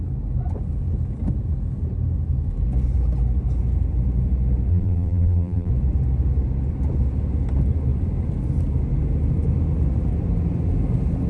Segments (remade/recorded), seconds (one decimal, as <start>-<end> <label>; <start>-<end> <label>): 0.0-4.7 recorded; 4.7-5.7 remade; 5.7-11.3 recorded